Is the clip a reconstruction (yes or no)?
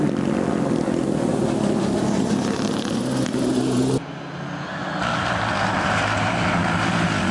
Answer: no